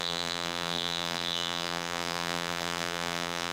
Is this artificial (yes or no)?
yes